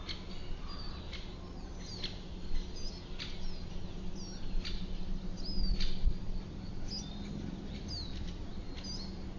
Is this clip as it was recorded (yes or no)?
yes